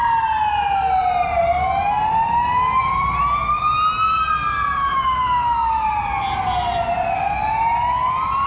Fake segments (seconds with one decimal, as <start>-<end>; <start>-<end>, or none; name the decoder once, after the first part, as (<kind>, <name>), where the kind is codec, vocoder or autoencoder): 4.8-6.0 (autoencoder, DAC-VAE)